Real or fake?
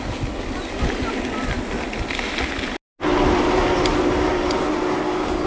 real